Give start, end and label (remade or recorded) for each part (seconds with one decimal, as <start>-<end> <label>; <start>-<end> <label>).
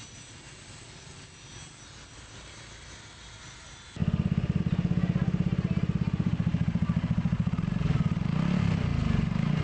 0.0-4.0 recorded; 4.0-4.6 remade; 4.6-6.5 recorded; 6.5-7.8 remade; 7.8-9.6 recorded